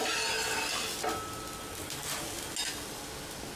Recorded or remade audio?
recorded